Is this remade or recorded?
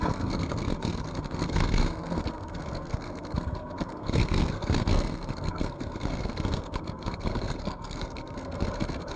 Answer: remade